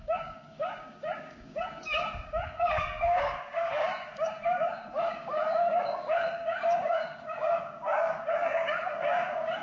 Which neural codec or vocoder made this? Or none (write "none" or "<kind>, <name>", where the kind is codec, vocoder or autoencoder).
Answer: codec, DAC